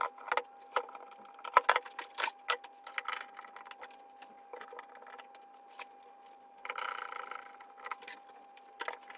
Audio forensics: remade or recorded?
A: recorded